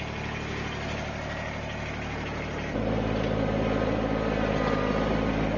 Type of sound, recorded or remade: recorded